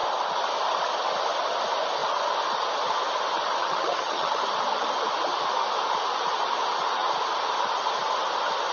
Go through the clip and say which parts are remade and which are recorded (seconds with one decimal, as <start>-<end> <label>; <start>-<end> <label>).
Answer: 0.0-3.6 recorded; 3.6-4.4 remade; 4.4-8.7 recorded